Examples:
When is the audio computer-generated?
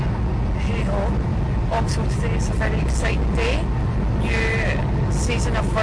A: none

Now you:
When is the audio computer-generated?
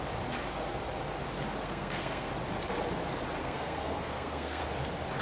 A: 1.6-2.3 (codec, SNAC); 3.4-4.6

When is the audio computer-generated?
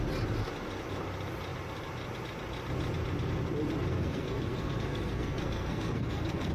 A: 3.9-6.5 (codec, SNAC)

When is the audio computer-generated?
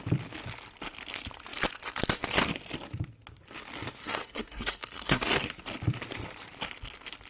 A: 4.0-5.3 (codec, SNAC)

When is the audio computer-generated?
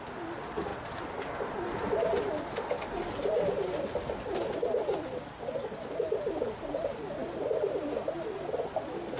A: none